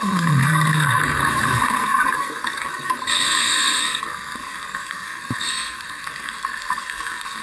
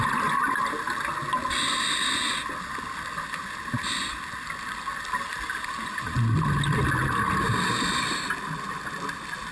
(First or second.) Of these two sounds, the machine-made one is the first